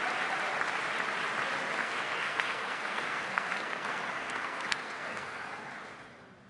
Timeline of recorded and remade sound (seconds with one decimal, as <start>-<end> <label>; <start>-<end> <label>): 0.0-1.8 recorded; 1.8-5.7 remade; 5.7-6.5 recorded